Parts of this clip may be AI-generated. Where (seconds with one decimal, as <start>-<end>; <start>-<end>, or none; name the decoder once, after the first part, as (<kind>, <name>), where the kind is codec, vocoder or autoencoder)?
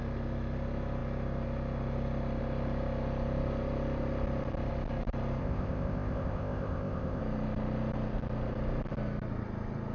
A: 5.4-7.2 (codec, ZipCodec)